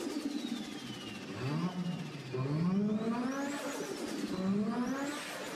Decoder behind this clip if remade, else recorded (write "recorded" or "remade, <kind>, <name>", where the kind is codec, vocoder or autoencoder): recorded